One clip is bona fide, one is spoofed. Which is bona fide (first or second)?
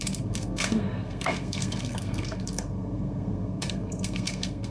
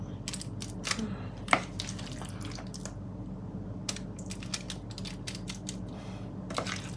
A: second